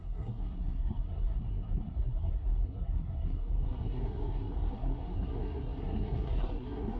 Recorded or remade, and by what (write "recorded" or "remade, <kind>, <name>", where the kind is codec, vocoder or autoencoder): remade, codec, SNAC